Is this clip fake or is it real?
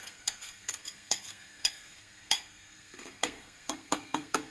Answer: fake